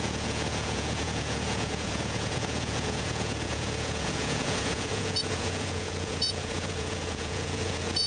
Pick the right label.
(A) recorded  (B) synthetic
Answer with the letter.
B